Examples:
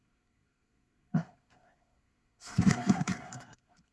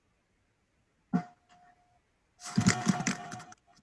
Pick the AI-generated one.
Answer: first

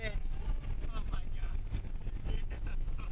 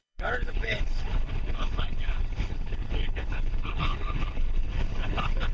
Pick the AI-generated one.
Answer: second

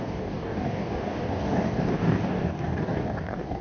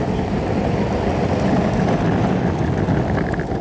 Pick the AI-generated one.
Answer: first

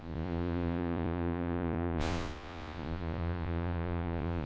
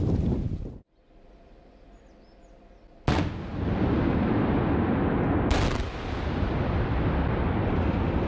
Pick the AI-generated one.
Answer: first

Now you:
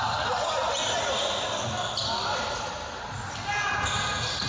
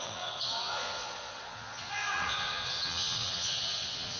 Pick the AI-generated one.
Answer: second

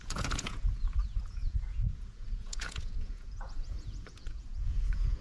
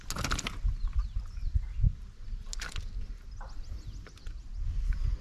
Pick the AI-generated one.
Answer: first